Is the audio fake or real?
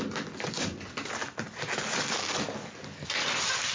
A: real